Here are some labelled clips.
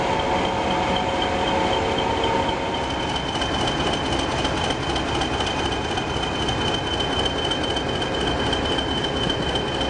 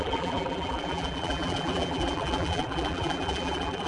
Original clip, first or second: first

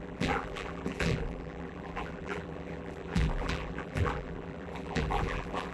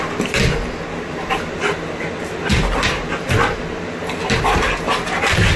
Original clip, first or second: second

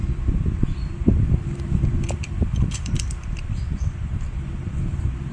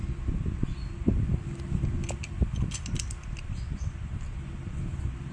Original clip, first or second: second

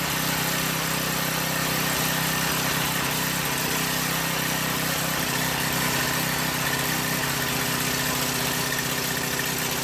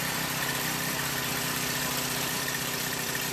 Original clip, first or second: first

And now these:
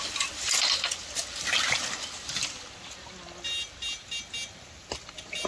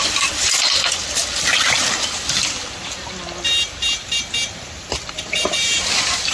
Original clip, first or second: first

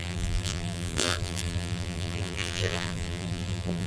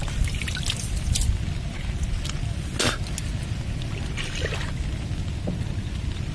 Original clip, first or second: second